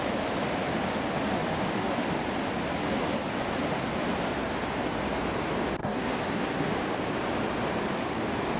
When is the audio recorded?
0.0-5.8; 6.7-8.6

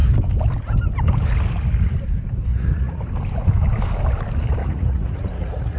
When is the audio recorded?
0.0-2.5; 3.0-4.6

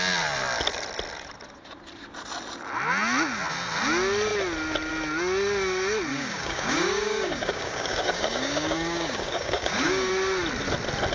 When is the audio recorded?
0.0-6.1; 10.1-11.1

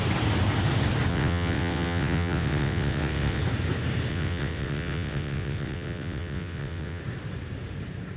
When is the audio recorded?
0.0-1.1; 3.4-4.1; 7.0-8.2

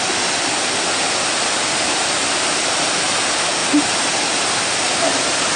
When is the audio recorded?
0.0-5.6

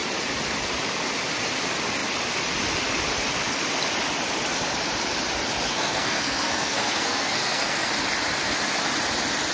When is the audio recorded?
0.0-5.7; 7.9-9.5

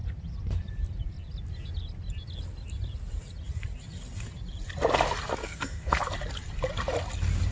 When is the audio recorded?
0.0-5.4; 6.0-7.5

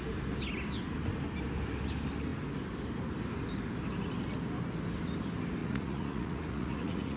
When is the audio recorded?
0.0-5.6